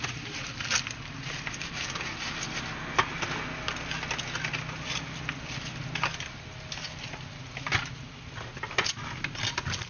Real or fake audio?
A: real